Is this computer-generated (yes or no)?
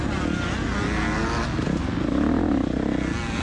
no